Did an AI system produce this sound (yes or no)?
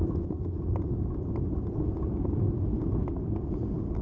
yes